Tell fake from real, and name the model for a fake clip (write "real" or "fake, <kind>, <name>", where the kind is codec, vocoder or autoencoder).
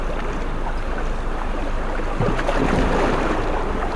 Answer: real